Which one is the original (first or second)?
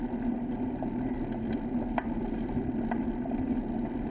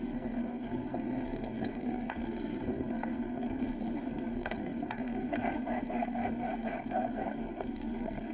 first